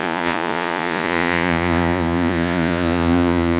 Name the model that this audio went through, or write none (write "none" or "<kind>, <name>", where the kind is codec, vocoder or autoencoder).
vocoder, Vocos